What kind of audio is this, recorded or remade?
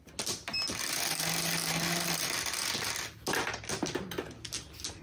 recorded